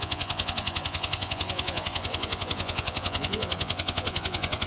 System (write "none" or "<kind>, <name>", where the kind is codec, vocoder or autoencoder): vocoder, Vocos